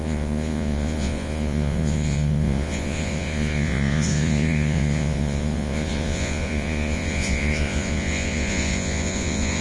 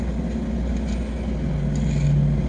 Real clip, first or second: second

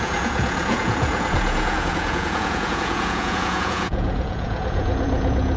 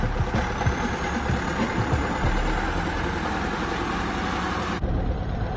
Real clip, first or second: second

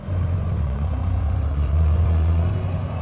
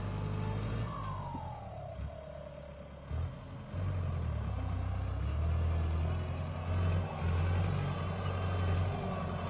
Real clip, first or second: second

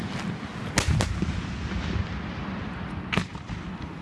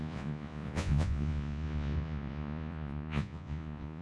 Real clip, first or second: first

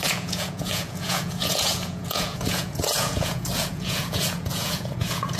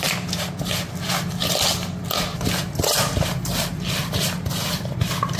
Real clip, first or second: second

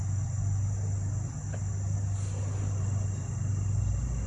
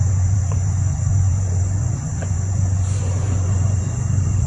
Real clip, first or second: first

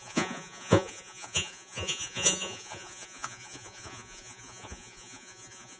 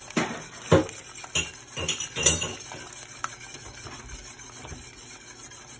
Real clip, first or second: second